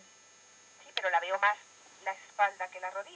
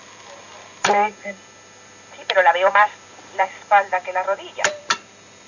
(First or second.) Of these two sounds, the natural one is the first